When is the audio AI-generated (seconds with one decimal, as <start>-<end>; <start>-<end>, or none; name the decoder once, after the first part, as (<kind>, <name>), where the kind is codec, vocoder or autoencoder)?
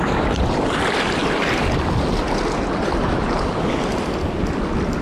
none